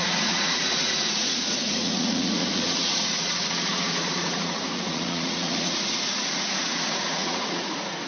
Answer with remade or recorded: remade